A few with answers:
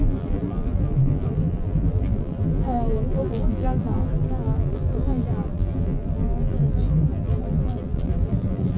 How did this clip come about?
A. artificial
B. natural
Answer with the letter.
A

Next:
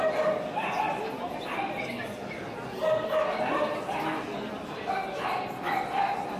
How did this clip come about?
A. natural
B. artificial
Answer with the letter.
A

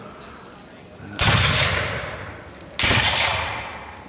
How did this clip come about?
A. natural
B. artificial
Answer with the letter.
A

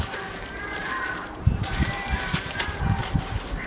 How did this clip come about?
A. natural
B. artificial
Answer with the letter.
B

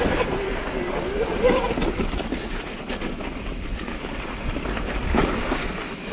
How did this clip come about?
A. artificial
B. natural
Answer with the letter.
B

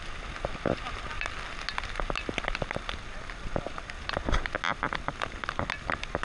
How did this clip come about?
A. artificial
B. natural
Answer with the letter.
B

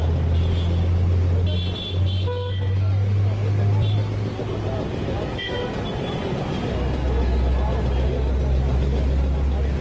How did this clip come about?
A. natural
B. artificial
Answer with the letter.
A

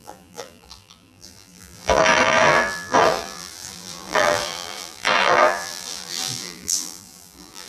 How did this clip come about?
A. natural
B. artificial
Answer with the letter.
B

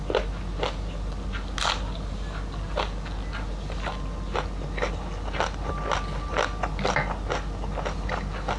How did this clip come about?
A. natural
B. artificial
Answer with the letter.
A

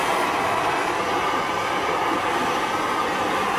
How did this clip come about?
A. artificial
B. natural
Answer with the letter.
B